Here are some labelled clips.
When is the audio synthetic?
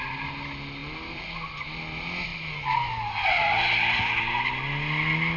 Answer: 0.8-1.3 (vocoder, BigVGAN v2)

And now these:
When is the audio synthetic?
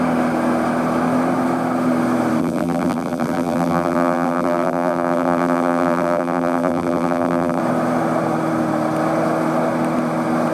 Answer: 2.4-7.6 (vocoder, BigVGAN v2)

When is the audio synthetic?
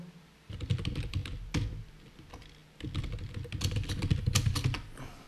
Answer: none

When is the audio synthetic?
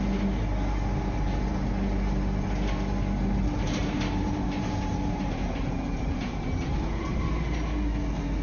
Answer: 3.8-7.3 (vocoder, BigVGAN v2)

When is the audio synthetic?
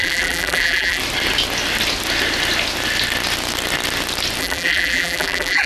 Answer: 0.0-1.0 (vocoder, BigVGAN v2); 4.4-5.7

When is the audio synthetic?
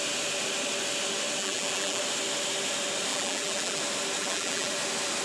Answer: 1.4-2.0 (vocoder, BigVGAN v2); 3.1-3.8; 4.2-4.7